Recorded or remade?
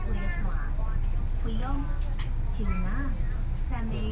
recorded